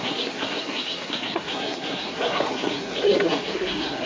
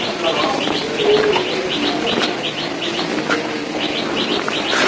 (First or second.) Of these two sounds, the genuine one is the second